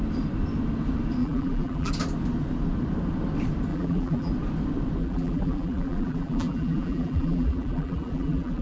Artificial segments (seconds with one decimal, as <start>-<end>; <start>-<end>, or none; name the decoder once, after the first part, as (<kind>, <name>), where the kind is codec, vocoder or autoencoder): 1.2-1.9 (vocoder, BigVGAN v2); 3.7-4.3; 5.0-8.6